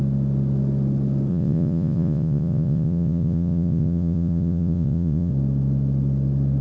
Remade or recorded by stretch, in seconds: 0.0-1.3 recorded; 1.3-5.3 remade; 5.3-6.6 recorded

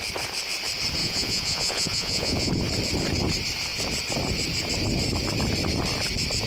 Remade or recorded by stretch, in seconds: 0.0-1.0 recorded; 1.0-2.5 remade; 2.5-6.5 recorded

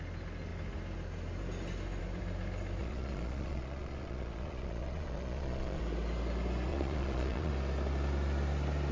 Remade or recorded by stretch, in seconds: 0.0-2.8 recorded; 2.8-5.8 remade; 5.8-6.7 recorded; 6.7-7.5 remade; 7.5-8.9 recorded

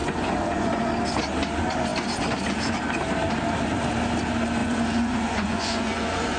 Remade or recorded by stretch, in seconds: 0.0-0.8 remade; 0.8-4.6 recorded; 4.6-6.4 remade

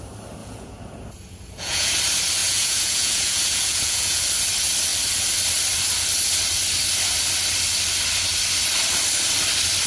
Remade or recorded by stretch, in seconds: 0.0-0.4 recorded; 0.4-1.9 remade; 1.9-2.4 recorded; 2.4-4.2 remade; 4.2-9.9 recorded